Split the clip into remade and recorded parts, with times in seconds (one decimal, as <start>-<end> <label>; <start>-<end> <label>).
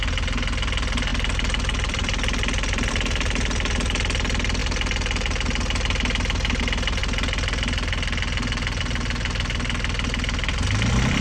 0.0-1.1 recorded; 1.1-2.9 remade; 2.9-11.2 recorded